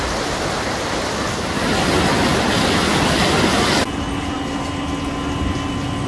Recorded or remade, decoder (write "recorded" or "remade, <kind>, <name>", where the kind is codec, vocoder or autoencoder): recorded